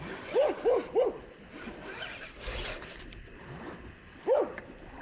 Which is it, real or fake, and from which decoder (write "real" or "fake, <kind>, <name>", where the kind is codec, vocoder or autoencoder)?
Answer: real